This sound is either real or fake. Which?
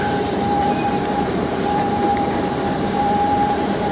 fake